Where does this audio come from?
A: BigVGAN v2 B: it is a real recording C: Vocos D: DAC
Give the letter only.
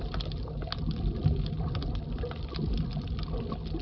B